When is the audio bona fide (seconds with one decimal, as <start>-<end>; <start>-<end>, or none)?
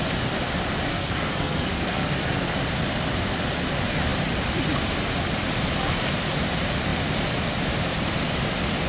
0.0-0.9; 2.5-8.9